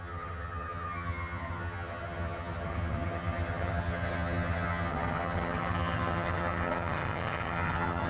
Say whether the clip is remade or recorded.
remade